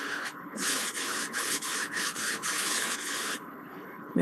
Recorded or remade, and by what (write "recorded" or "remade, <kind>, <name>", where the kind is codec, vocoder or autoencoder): remade, codec, HILCodec